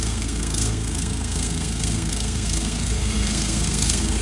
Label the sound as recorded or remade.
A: remade